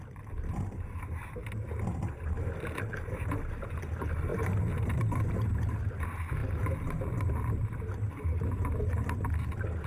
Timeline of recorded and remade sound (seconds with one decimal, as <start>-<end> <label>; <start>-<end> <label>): 0.0-0.5 recorded; 0.5-1.2 remade; 1.2-4.3 recorded; 4.3-5.9 remade; 5.9-6.4 recorded; 6.4-7.5 remade; 7.5-9.9 recorded